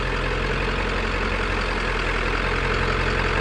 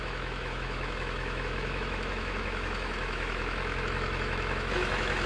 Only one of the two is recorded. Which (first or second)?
first